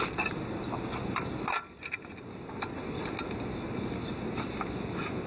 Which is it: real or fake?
real